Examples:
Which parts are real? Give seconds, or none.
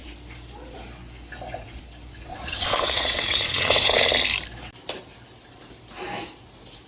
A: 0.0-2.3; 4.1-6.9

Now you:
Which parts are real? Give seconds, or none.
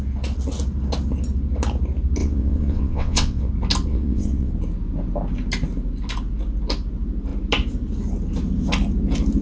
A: 0.0-2.2; 3.5-3.9; 4.5-9.4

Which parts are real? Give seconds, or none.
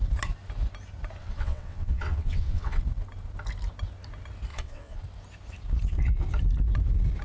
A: 0.0-1.2; 2.8-4.5; 5.0-7.2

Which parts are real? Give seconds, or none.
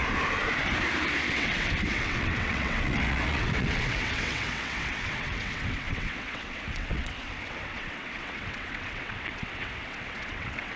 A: 0.0-1.3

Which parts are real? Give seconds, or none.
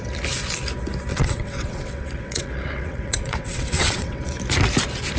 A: 0.0-1.1; 4.2-5.2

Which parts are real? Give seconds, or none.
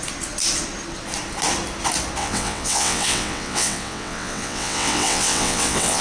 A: 0.0-2.2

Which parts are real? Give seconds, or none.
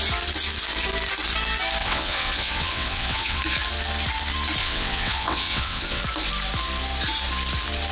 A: 0.0-1.8; 3.4-4.6; 6.0-7.9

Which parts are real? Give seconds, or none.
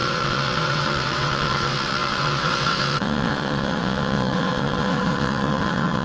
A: none